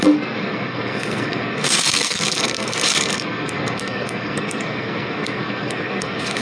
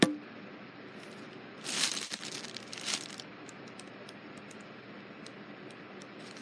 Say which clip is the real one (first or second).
second